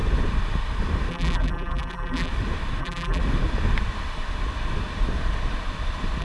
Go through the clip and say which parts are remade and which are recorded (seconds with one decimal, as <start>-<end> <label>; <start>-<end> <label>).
0.0-1.1 recorded; 1.1-2.3 remade; 2.3-2.8 recorded; 2.8-3.2 remade; 3.2-6.2 recorded